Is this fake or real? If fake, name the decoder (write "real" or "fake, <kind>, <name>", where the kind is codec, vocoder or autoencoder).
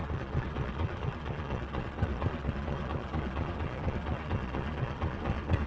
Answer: fake, vocoder, Vocos